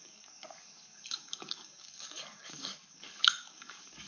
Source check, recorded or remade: remade